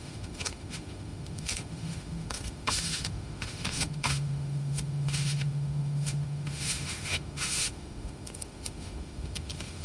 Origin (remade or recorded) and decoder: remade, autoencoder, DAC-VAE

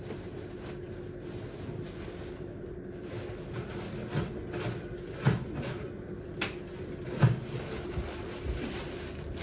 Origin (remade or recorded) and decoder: recorded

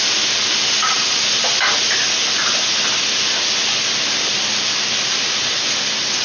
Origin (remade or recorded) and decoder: recorded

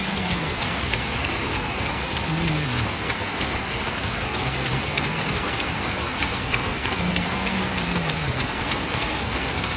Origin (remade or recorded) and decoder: remade, codec, SNAC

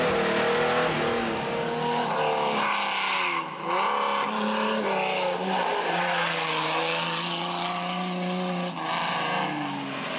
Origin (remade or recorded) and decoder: recorded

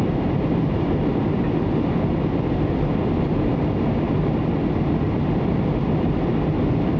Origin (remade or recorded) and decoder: recorded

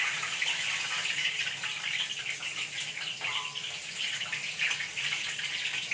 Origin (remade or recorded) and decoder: recorded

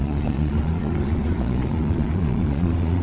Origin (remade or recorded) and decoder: remade, vocoder, Vocos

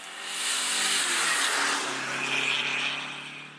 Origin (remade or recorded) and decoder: recorded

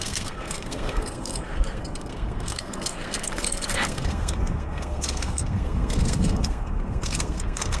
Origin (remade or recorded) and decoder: remade, codec, SNAC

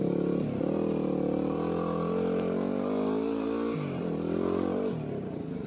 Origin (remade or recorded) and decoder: recorded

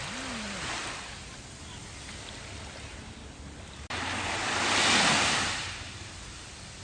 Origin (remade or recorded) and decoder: recorded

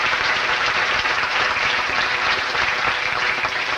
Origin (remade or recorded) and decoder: remade, vocoder, BigVGAN v2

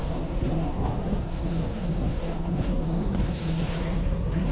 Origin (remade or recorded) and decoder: remade, codec, SNAC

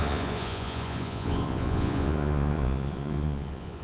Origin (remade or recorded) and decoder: remade, vocoder, Vocos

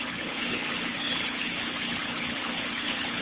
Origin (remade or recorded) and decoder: remade, codec, HILCodec